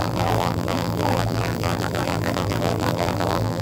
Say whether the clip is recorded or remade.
remade